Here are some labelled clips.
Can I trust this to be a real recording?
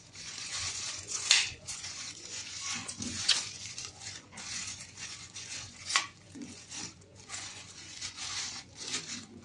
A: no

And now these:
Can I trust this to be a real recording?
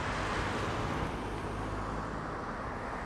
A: yes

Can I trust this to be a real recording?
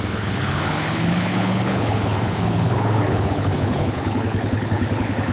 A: no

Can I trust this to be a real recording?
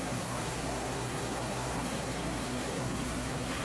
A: no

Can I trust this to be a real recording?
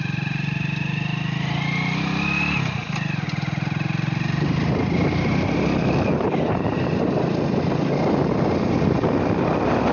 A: yes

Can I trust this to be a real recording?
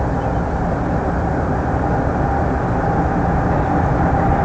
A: yes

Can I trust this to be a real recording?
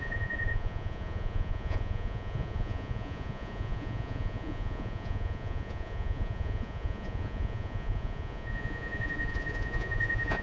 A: no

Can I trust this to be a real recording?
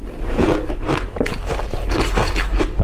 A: yes